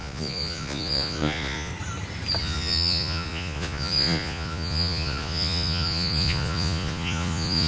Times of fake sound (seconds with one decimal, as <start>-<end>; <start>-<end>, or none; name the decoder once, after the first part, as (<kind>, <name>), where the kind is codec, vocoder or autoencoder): 0.0-1.7 (vocoder, Vocos); 2.4-7.7